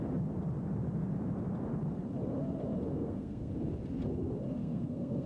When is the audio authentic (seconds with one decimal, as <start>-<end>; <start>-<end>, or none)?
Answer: 0.0-2.9; 3.5-4.6